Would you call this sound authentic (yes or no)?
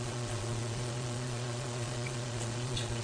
no